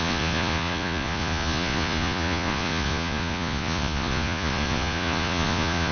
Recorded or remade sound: remade